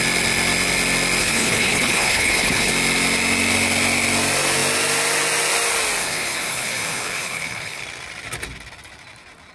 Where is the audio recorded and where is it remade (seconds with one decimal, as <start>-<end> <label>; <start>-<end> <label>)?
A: 0.0-1.2 recorded; 1.2-2.7 remade; 2.7-6.0 recorded; 6.0-7.8 remade; 7.8-9.5 recorded